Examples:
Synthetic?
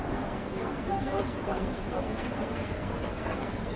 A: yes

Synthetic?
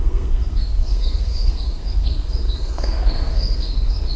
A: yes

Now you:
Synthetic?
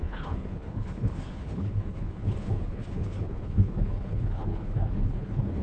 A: yes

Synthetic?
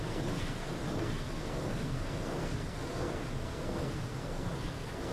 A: yes